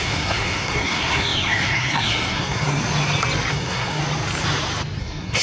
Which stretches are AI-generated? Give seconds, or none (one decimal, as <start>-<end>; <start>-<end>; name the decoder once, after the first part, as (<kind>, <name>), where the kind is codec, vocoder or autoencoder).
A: 0.0-2.8 (codec, SNAC); 3.5-4.0; 5.0-5.4